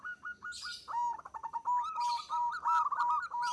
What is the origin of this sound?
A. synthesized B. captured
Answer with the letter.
B